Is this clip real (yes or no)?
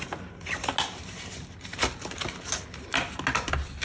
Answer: yes